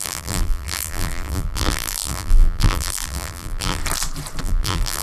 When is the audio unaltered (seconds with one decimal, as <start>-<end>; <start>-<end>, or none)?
3.8-4.4